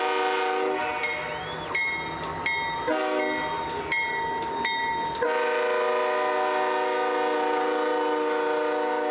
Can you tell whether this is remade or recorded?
recorded